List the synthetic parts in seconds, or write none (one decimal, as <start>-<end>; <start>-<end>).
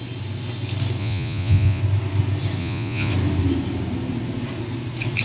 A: 1.0-1.8; 2.6-3.1